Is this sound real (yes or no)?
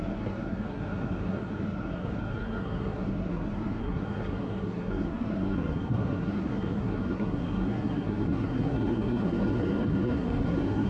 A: no